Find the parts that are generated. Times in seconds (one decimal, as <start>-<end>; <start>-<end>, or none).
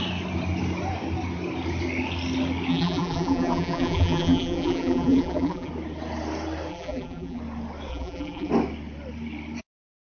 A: 2.7-5.7; 6.7-7.4; 7.9-8.5